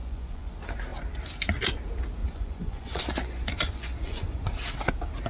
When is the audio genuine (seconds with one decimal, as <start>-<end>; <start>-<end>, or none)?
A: 0.5-2.2; 4.4-5.3